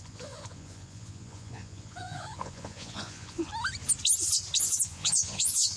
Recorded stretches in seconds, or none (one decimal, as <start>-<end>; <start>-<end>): 3.5-4.6